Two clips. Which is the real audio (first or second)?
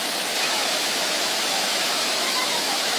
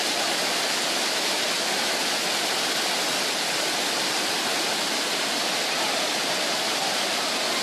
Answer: second